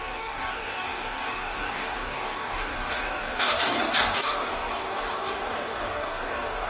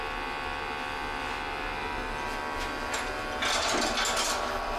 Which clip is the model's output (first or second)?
first